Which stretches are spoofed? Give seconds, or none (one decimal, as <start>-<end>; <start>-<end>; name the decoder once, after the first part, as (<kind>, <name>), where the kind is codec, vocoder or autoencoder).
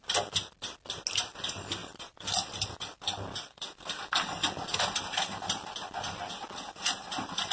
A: 1.8-4.5 (vocoder, BigVGAN v2)